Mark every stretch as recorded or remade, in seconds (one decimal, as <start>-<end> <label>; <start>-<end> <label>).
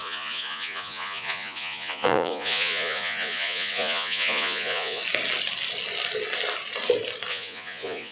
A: 0.0-5.0 remade; 5.0-7.3 recorded; 7.3-8.1 remade